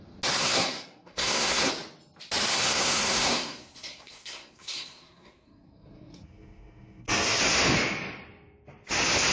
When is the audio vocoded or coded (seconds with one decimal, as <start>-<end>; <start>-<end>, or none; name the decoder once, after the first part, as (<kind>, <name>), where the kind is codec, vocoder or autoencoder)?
0.4-1.7 (codec, SNAC); 2.5-7.4